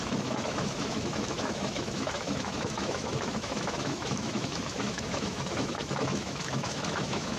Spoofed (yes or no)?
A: yes